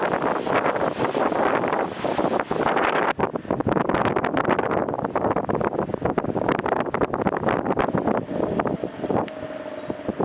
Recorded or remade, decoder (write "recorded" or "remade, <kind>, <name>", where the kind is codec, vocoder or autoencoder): recorded